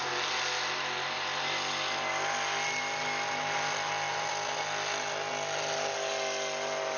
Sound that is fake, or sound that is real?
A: real